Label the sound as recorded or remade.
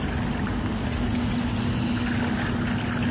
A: recorded